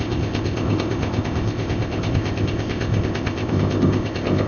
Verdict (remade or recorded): remade